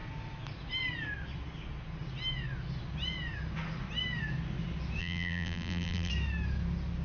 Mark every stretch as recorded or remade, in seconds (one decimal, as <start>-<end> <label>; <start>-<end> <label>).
0.0-5.0 recorded; 5.0-6.1 remade; 6.1-7.0 recorded